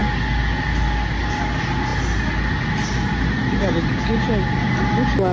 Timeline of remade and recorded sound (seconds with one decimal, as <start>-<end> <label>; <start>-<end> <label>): 0.0-5.3 recorded